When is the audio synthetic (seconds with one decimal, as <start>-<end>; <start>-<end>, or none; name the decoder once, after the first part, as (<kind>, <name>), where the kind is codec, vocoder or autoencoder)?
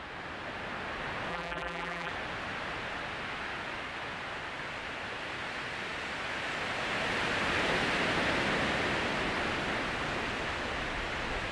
1.3-2.1 (vocoder, BigVGAN v2)